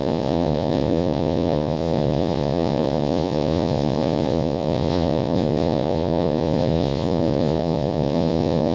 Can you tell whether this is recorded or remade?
remade